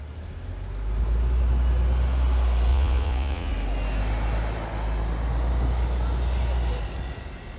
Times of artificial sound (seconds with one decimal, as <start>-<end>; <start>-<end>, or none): 2.7-3.5